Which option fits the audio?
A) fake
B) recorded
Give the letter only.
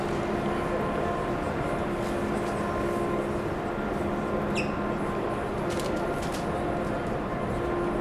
B